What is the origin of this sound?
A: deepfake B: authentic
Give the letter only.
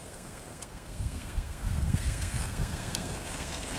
A